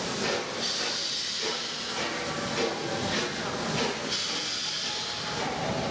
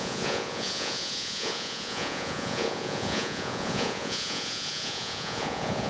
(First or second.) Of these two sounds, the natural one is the first